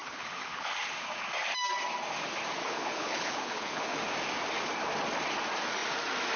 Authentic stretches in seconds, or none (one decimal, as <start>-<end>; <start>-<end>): 0.7-2.6; 4.0-6.4